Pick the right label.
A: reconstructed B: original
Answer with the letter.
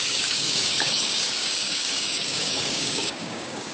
A